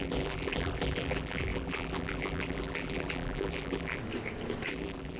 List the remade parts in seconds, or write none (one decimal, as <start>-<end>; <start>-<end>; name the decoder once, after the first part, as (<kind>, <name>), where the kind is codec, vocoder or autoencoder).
0.0-4.0 (vocoder, BigVGAN v2); 4.7-5.2